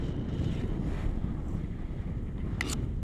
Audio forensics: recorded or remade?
recorded